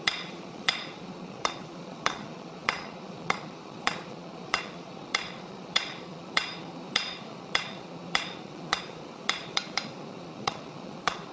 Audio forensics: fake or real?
fake